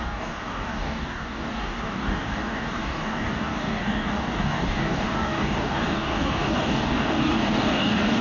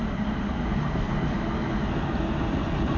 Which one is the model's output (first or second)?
first